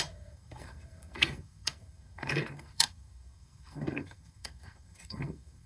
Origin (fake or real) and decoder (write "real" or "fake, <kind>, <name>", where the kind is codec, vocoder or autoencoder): fake, codec, SNAC